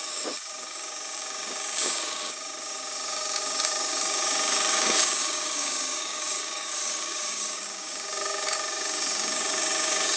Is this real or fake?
fake